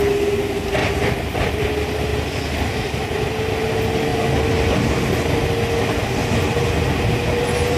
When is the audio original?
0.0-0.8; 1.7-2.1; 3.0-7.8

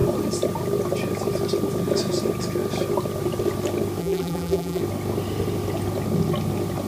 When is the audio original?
0.0-4.0; 4.8-6.9